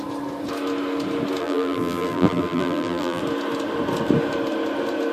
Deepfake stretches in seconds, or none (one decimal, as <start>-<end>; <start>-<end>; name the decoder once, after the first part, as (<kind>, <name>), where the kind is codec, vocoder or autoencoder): 1.4-3.2 (vocoder, BigVGAN v2)